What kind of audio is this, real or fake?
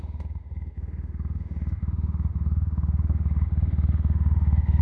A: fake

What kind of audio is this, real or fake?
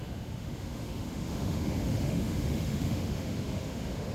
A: fake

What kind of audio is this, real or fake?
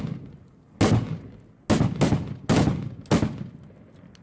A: real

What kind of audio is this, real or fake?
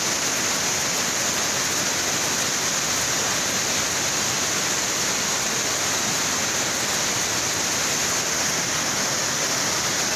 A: real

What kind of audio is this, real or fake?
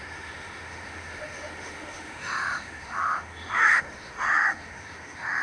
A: fake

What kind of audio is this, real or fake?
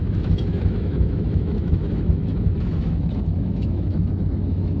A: fake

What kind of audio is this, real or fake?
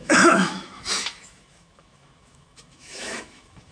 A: fake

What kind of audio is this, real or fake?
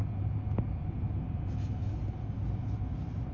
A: real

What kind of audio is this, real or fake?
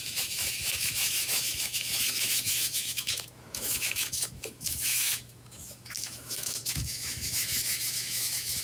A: fake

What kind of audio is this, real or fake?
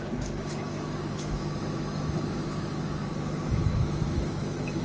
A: fake